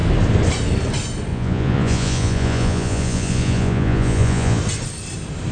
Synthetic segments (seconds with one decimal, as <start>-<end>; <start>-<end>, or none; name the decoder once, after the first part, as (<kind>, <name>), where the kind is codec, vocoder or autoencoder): 1.3-4.6 (vocoder, Vocos)